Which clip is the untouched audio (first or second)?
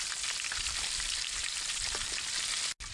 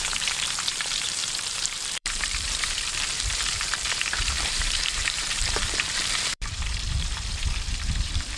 first